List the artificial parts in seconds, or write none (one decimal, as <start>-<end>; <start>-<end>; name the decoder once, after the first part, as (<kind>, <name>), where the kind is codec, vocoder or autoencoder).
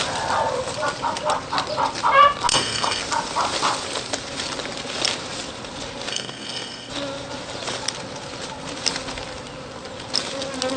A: 2.5-3.0 (codec, SNAC); 6.1-6.9